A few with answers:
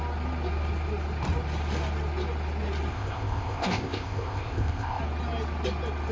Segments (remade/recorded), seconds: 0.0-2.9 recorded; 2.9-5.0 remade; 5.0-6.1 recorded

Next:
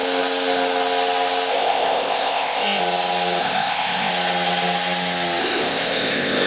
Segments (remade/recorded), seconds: 0.0-1.5 recorded; 1.5-2.8 remade; 2.8-3.4 recorded; 3.4-4.1 remade; 4.1-5.4 recorded; 5.4-6.5 remade

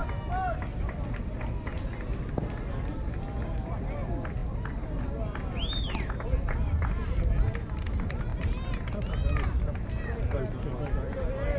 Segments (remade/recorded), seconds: 0.0-11.6 recorded

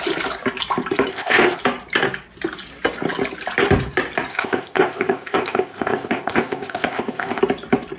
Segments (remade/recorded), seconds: 0.0-1.1 recorded; 1.1-1.6 remade; 1.6-4.3 recorded; 4.3-7.4 remade; 7.4-8.0 recorded

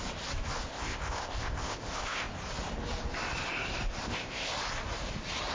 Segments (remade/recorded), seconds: 0.0-0.7 recorded; 0.7-2.3 remade; 2.3-4.0 recorded; 4.0-4.5 remade; 4.5-5.5 recorded

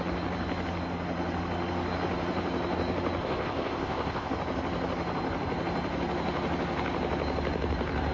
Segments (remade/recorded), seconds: 0.0-3.2 recorded; 3.2-4.3 remade; 4.3-8.1 recorded

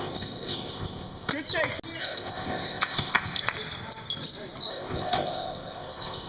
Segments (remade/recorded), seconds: 0.0-1.3 remade; 1.3-2.0 recorded; 2.0-3.4 remade; 3.4-4.7 recorded; 4.7-6.3 remade